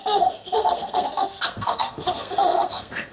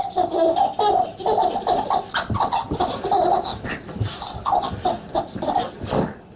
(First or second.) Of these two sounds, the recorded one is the second